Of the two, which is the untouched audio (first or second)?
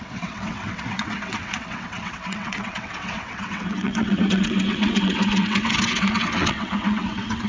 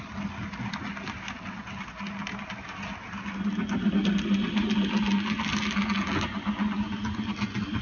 second